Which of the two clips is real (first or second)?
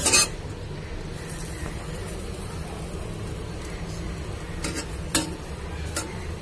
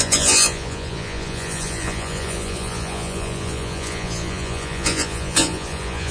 first